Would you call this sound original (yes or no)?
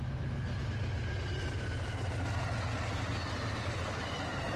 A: yes